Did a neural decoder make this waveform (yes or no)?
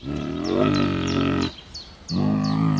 no